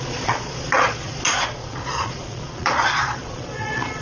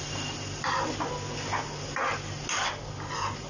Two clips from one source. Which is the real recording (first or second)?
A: second